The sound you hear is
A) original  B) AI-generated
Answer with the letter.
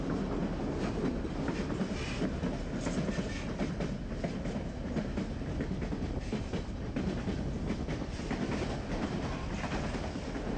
A